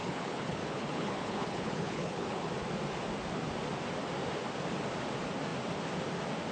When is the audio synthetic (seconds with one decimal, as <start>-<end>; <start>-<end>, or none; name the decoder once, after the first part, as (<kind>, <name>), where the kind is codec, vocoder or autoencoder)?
0.0-2.5 (codec, HILCodec)